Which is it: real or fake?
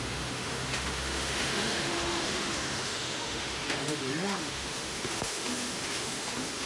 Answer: fake